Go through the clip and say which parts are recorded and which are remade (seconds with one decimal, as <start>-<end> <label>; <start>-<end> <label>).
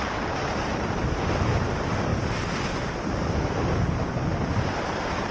0.0-0.7 recorded; 0.7-1.7 remade; 1.7-2.1 recorded; 2.1-5.3 remade